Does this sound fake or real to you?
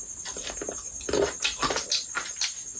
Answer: real